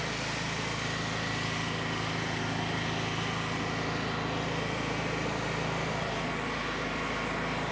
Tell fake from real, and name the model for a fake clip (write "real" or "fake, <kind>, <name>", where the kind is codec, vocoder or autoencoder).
real